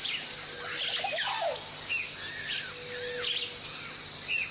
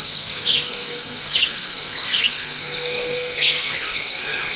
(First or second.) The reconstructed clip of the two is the second